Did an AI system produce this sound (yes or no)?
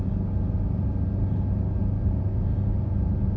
no